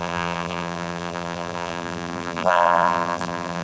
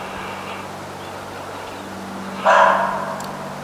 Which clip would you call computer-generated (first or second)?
first